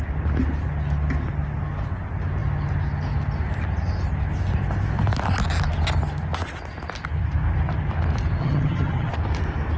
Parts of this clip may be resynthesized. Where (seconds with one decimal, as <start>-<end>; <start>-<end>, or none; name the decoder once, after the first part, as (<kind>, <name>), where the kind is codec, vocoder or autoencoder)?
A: 8.4-9.1 (vocoder, HiFi-GAN)